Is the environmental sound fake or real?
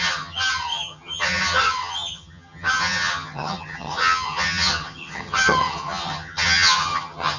fake